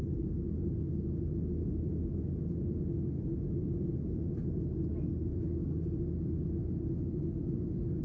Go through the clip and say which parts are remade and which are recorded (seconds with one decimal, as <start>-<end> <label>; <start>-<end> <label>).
0.0-8.0 recorded